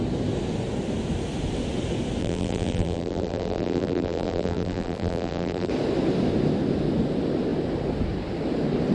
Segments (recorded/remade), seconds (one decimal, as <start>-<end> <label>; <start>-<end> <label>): 0.0-2.2 recorded; 2.2-5.7 remade; 5.7-8.9 recorded